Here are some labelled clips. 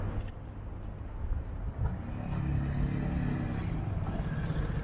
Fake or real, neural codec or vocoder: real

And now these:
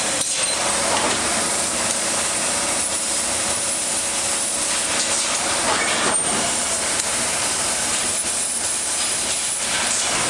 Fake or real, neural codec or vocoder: fake, vocoder, BigVGAN v2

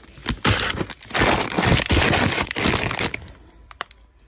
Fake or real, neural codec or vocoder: fake, vocoder, BigVGAN v2